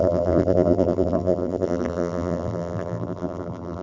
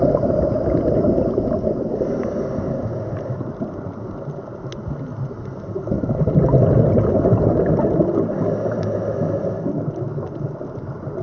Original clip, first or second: second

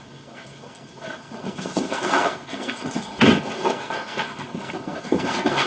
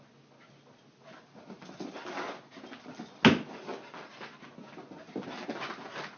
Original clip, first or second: second